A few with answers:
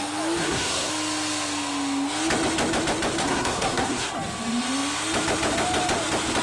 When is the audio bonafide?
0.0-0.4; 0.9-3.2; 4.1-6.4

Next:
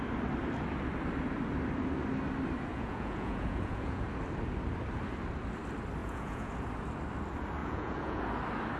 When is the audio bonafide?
0.0-2.7; 4.1-6.0; 6.5-7.6; 8.2-8.8

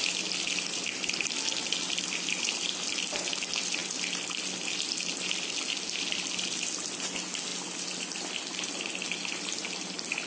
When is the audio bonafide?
0.0-10.3

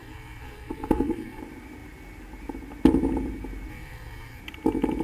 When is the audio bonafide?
1.4-3.7; 4.4-5.0

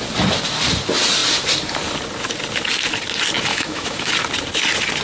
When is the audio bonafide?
0.0-3.5; 4.1-5.0